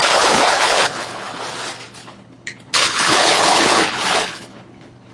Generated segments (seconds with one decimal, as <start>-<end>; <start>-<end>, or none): 0.0-1.4; 2.0-5.1